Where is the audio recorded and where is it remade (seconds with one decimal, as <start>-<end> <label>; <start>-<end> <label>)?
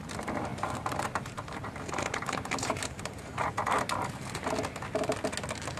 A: 0.0-0.5 recorded; 0.5-3.5 remade; 3.5-5.8 recorded